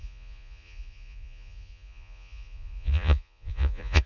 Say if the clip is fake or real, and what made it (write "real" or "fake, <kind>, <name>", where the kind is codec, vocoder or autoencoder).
fake, vocoder, Vocos